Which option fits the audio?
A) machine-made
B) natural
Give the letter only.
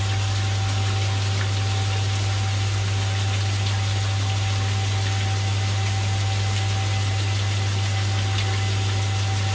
B